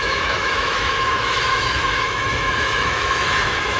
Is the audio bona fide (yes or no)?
no